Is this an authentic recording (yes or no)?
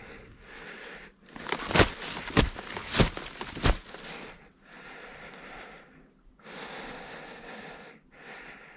yes